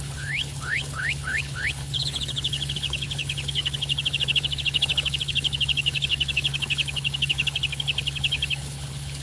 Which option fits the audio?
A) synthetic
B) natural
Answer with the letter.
A